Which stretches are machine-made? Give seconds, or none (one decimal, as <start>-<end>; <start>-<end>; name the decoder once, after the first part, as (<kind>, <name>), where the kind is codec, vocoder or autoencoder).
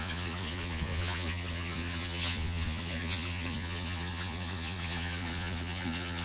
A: 0.0-6.2 (vocoder, Vocos)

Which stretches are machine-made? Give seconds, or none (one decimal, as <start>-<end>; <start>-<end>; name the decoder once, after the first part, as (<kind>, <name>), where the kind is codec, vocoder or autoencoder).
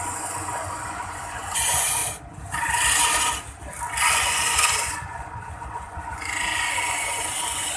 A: 0.0-2.0 (vocoder, Vocos); 4.1-7.8